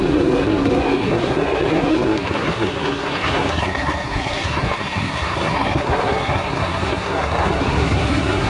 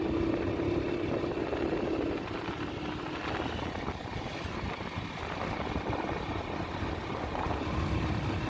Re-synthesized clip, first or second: first